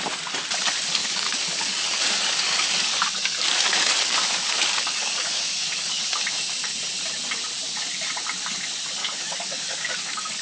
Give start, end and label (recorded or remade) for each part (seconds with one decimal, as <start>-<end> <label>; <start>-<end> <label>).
0.0-1.0 recorded; 1.0-6.0 remade; 6.0-9.0 recorded; 9.0-10.4 remade